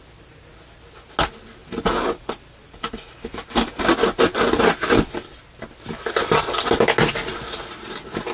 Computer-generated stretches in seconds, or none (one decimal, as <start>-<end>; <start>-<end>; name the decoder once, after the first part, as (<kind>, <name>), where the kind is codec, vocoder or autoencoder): 1.6-3.8 (vocoder, BigVGAN v2); 6.2-6.8